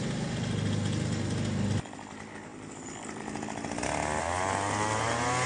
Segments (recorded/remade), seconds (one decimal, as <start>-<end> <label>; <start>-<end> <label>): 0.0-5.5 recorded

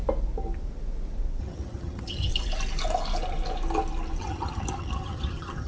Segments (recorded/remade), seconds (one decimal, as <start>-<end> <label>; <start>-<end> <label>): 0.0-1.4 recorded; 1.4-2.3 remade; 2.3-4.2 recorded; 4.2-5.7 remade

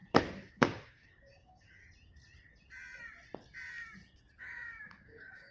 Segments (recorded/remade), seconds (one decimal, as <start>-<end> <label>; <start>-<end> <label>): 0.0-0.5 recorded; 0.5-1.8 remade; 1.8-4.4 recorded; 4.4-5.5 remade

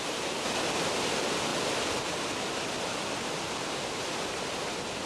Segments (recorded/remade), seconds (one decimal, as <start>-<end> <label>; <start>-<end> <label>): 0.0-1.5 recorded; 1.5-4.2 remade; 4.2-5.1 recorded